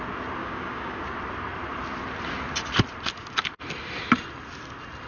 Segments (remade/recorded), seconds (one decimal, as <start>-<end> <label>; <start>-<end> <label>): 0.0-0.4 recorded; 0.4-1.0 remade; 1.0-5.1 recorded